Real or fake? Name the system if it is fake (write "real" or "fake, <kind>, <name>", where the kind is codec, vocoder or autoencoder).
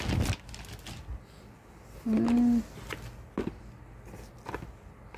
real